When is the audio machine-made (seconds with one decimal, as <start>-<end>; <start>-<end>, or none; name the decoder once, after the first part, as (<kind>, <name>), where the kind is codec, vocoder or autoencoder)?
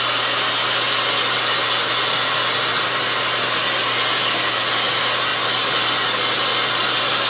none